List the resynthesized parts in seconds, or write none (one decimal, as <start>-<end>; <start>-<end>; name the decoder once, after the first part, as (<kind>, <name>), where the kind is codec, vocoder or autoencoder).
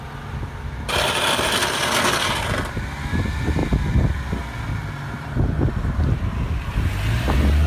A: none